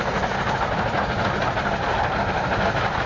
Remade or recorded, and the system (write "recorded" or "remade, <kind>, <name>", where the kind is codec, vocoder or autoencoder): recorded